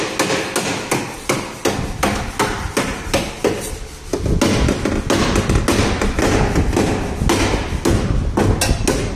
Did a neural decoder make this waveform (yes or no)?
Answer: no